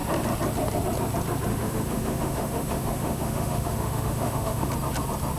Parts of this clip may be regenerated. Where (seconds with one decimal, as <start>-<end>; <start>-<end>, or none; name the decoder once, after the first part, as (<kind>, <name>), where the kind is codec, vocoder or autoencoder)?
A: 1.5-4.7 (autoencoder, DAC-VAE)